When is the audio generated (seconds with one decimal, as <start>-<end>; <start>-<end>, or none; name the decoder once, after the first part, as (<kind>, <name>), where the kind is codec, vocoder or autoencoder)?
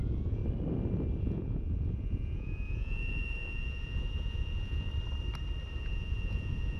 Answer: 0.0-0.4 (vocoder, Vocos); 1.2-4.9; 5.8-6.8